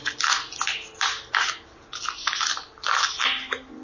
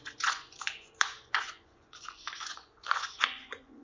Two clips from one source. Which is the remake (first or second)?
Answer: second